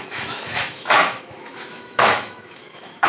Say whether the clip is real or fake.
fake